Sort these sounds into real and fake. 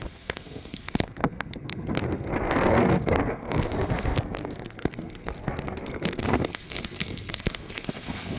fake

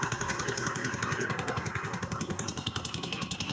fake